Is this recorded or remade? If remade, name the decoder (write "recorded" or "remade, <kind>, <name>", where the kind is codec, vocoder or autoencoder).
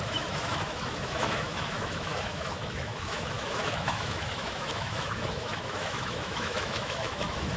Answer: remade, autoencoder, DAC-VAE